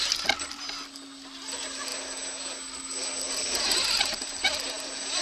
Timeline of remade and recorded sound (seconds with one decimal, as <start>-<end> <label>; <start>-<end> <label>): 0.0-5.2 recorded